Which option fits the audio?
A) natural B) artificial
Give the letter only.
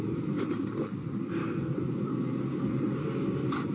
B